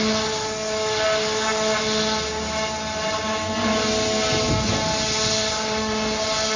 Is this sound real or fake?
real